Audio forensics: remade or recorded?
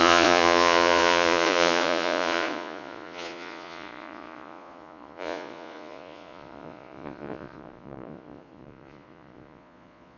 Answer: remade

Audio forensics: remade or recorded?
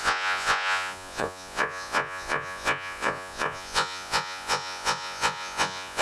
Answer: remade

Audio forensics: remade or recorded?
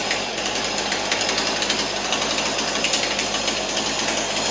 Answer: recorded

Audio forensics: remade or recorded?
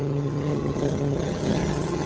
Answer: remade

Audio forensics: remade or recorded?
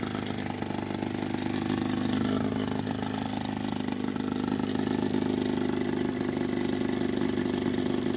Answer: recorded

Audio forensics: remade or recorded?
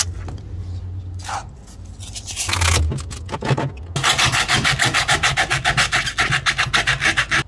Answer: recorded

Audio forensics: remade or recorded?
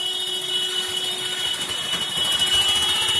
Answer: recorded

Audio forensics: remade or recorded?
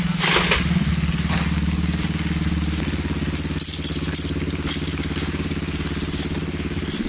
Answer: recorded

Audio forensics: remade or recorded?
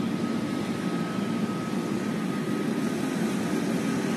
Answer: recorded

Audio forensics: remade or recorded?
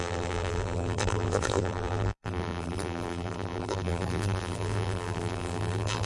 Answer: remade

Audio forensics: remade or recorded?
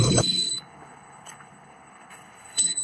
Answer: remade